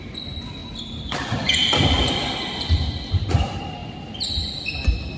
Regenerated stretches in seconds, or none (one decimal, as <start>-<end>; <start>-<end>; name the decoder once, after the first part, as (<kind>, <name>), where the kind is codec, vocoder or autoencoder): none